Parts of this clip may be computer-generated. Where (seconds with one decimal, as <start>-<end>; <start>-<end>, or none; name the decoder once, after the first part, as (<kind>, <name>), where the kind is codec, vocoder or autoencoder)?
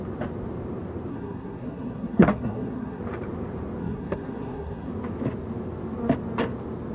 1.1-3.0 (codec, SNAC); 3.8-4.9